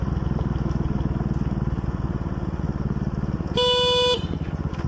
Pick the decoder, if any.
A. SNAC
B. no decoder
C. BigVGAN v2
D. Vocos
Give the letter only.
B